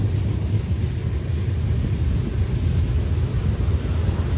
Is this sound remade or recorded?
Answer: recorded